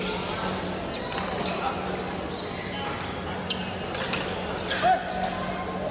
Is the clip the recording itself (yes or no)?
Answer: yes